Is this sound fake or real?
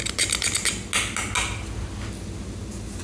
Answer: real